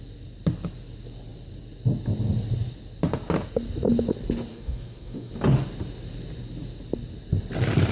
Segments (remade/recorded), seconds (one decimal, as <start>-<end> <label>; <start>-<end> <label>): 0.0-4.5 recorded; 4.5-5.3 remade; 5.3-7.9 recorded